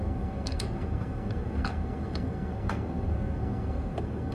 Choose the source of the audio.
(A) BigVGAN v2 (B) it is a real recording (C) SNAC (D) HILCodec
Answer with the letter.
C